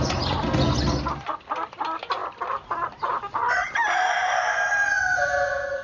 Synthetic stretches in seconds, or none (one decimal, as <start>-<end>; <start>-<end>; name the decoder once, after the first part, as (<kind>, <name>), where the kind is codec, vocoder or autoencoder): none